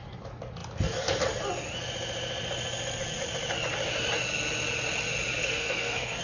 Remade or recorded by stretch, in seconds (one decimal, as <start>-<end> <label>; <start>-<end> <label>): 0.0-5.4 recorded; 5.4-6.2 remade